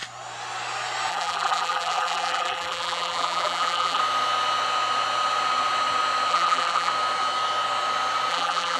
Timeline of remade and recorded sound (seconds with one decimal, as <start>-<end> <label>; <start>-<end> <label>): 0.0-1.1 recorded; 1.1-4.0 remade; 4.0-6.3 recorded; 6.3-6.9 remade; 6.9-8.3 recorded; 8.3-8.8 remade